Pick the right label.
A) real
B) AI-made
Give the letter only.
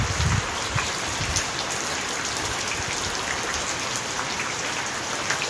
A